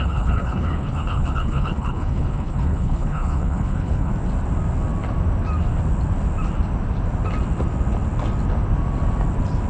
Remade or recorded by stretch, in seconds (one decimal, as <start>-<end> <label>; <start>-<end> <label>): 0.0-4.1 remade; 4.1-9.7 recorded

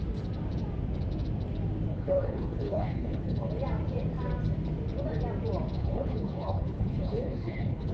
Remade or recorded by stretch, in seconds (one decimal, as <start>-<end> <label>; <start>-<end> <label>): 0.0-1.9 recorded; 1.9-3.5 remade; 3.5-5.8 recorded; 5.8-7.9 remade

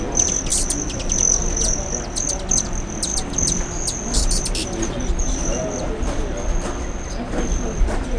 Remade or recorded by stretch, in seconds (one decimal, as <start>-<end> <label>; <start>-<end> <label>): 0.0-8.2 recorded

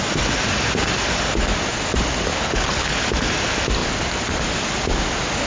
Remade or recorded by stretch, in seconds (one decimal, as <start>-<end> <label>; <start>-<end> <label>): 0.0-2.3 recorded; 2.3-3.0 remade; 3.0-5.5 recorded